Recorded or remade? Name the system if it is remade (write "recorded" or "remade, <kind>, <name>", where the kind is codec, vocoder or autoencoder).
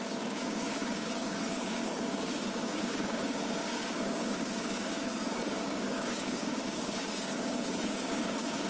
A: remade, codec, DAC